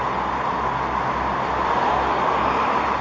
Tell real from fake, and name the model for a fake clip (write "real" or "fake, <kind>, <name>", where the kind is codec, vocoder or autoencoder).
real